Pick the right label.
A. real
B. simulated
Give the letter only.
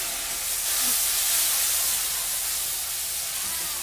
A